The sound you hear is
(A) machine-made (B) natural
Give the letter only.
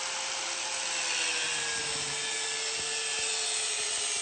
B